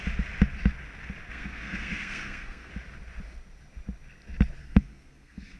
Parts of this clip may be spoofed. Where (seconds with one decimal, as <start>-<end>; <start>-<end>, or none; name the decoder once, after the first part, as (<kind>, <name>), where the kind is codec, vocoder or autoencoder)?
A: 1.3-2.7 (codec, SNAC); 4.6-5.6